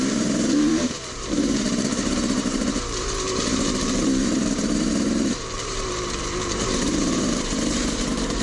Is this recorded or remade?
remade